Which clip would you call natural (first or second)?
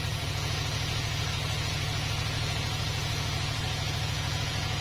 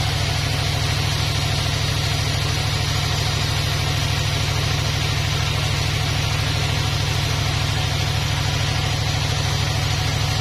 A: second